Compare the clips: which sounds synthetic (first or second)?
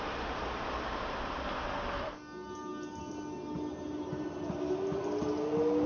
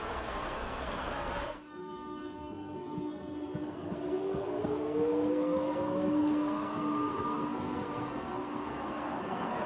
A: second